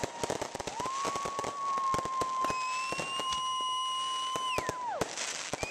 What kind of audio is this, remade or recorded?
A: recorded